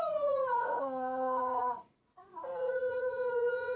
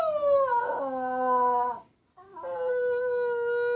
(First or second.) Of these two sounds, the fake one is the first